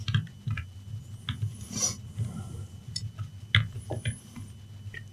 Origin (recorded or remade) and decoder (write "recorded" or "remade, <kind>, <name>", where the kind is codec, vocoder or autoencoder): recorded